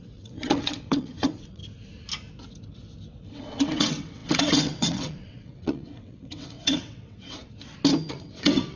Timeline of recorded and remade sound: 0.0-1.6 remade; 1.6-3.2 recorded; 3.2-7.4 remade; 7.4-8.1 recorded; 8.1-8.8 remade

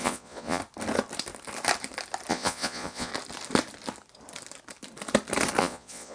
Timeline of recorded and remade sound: 0.0-0.6 remade; 0.6-2.3 recorded; 2.3-3.1 remade; 3.1-5.6 recorded; 5.6-6.1 remade

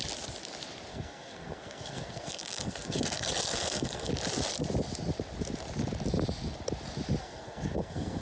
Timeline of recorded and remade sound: 0.0-0.9 recorded; 0.9-4.1 remade; 4.1-7.2 recorded; 7.2-8.2 remade

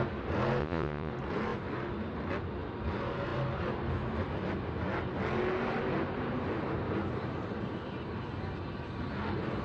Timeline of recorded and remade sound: 0.0-0.6 recorded; 0.6-1.1 remade; 1.1-9.6 recorded

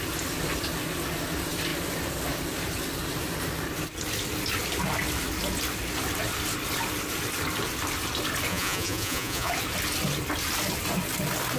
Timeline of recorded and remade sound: 0.0-8.5 recorded; 8.5-9.5 remade; 9.5-11.6 recorded

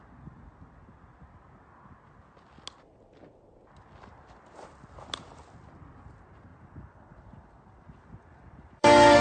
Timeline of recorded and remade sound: 0.0-6.5 recorded; 6.5-9.2 remade

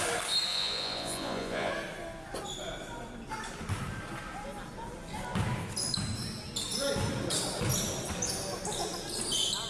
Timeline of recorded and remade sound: 0.0-0.5 recorded; 0.5-1.7 remade; 1.7-9.7 recorded

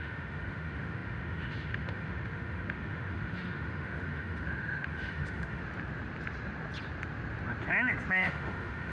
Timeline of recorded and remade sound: 0.0-5.6 remade; 5.6-8.1 recorded; 8.1-8.9 remade